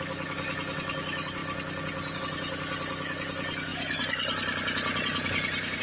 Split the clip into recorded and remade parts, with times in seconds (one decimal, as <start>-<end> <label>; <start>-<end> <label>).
0.0-5.8 recorded